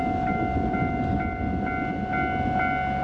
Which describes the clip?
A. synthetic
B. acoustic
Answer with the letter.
B